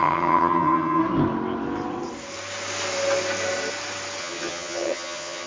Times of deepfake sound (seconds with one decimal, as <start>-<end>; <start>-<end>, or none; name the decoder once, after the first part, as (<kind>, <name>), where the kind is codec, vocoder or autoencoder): 0.0-1.0 (vocoder, HiFi-GAN); 4.2-5.5